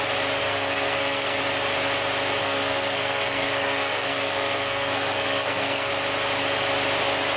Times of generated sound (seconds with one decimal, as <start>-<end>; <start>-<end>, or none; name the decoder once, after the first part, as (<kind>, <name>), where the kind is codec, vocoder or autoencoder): 0.4-1.4 (codec, SNAC); 2.4-5.9